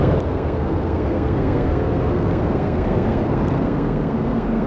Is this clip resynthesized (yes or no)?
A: yes